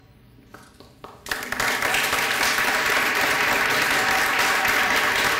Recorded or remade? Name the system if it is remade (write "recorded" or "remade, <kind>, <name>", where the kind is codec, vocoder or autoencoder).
recorded